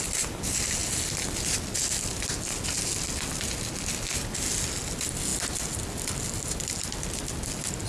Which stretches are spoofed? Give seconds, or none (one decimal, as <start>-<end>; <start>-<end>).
none

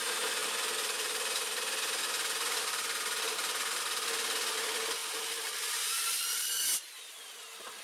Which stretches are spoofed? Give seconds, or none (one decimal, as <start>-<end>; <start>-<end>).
0.4-3.8

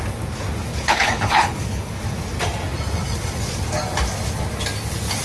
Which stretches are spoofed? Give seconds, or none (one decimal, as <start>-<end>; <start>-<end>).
0.7-2.0

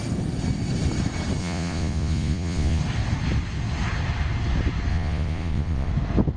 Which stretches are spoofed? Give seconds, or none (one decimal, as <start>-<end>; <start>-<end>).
1.4-2.8; 4.9-5.9